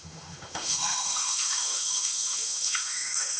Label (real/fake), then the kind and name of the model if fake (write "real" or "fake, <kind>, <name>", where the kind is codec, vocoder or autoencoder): fake, autoencoder, DAC-VAE